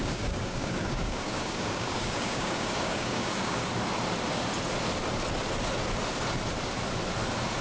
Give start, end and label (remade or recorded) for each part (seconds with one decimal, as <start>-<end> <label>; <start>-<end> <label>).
0.0-3.7 remade; 3.7-7.6 recorded